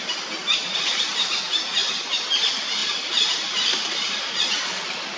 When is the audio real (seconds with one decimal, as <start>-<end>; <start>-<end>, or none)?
0.0-0.4; 1.1-2.8; 4.4-5.2

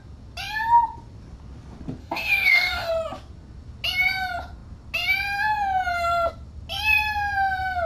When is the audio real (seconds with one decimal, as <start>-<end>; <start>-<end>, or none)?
0.0-2.0; 2.9-7.9

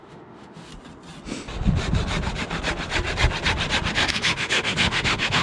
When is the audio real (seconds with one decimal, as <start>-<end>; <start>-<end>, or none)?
0.7-3.9

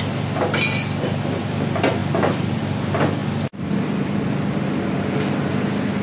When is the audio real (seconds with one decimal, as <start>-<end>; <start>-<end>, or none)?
0.0-6.0

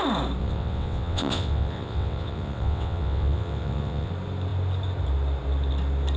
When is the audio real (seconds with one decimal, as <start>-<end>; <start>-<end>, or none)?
0.0-0.4; 4.1-6.2

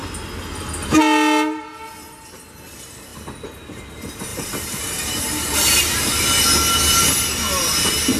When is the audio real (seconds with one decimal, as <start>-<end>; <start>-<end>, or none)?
0.0-3.1; 3.8-4.3; 5.8-8.2

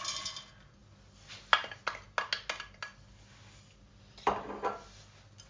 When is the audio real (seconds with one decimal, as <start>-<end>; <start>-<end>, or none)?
0.0-5.5

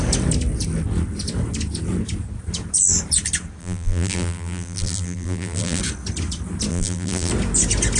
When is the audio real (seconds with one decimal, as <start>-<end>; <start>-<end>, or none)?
0.0-3.6; 5.8-6.7; 7.3-8.0